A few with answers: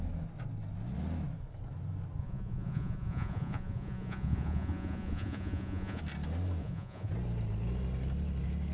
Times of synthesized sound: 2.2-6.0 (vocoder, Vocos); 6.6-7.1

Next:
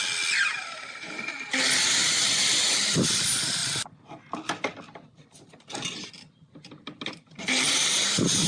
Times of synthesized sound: 0.6-3.6 (vocoder, BigVGAN v2); 7.1-8.5

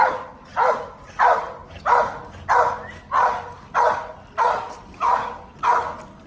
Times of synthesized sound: none

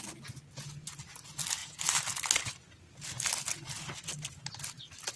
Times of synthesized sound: none

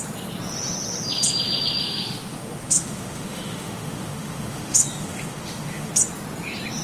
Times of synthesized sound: 1.8-5.9 (autoencoder, DAC-VAE)

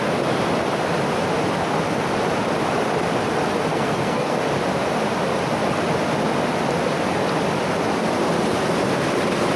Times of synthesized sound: 3.7-4.4 (codec, SNAC)

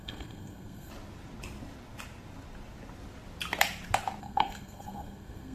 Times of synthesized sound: 0.0-0.9 (codec, SNAC); 4.2-5.5